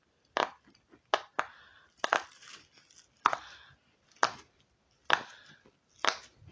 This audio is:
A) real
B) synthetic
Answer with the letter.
A